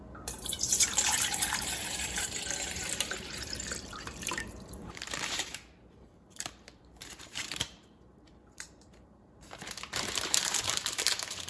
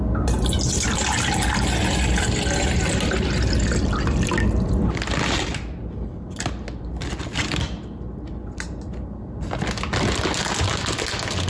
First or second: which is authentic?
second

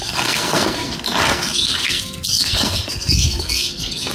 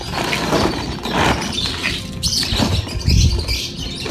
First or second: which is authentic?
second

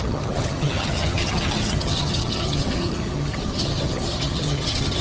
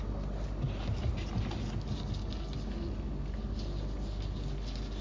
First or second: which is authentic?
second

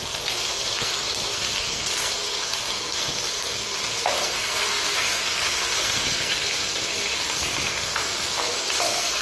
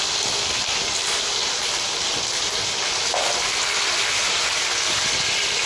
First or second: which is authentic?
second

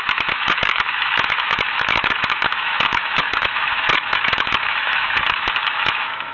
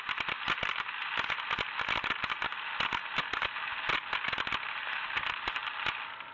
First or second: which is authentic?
second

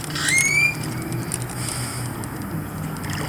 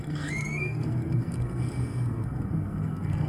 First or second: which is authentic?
first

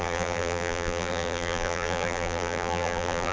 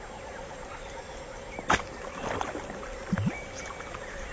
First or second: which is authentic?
second